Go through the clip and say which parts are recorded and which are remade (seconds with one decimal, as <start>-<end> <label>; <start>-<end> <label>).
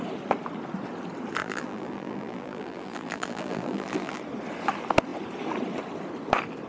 0.0-1.4 recorded; 1.4-4.2 remade; 4.2-6.7 recorded